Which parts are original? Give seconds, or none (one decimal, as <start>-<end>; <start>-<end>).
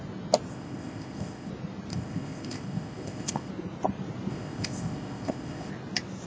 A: 0.0-0.5; 1.5-1.9; 3.5-4.3; 5.7-6.3